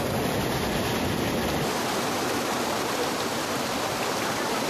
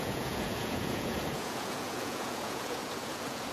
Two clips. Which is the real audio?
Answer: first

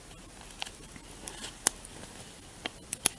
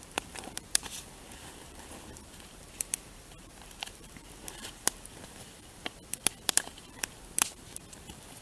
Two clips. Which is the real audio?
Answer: first